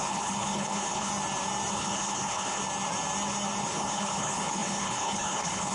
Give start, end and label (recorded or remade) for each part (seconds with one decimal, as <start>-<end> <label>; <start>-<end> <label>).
0.0-1.1 remade; 1.1-1.7 recorded; 1.7-2.6 remade; 2.6-3.6 recorded; 3.6-5.7 remade